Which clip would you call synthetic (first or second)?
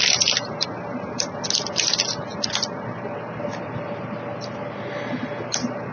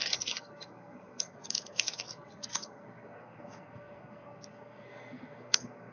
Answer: second